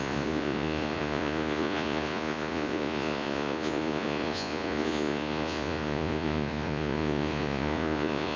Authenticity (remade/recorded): remade